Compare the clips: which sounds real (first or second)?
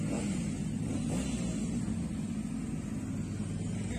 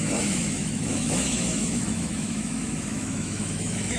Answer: first